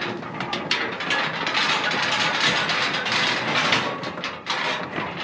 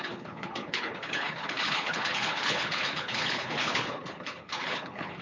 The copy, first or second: second